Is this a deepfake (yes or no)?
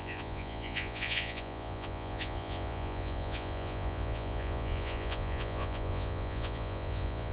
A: yes